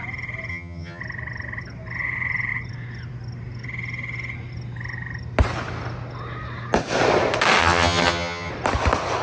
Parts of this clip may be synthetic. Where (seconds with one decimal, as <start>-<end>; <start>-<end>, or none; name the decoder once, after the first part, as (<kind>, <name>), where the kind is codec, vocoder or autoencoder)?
0.5-1.0 (vocoder, HiFi-GAN); 7.6-8.5